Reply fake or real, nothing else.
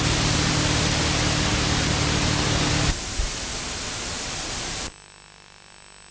real